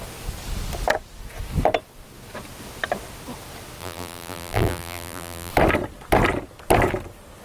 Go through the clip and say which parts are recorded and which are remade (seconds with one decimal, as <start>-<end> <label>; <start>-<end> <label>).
0.0-3.8 recorded; 3.8-5.5 remade; 5.5-7.4 recorded